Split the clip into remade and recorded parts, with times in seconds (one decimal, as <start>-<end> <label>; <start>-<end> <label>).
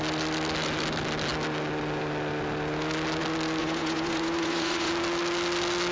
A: 0.0-3.6 recorded; 3.6-4.9 remade; 4.9-5.9 recorded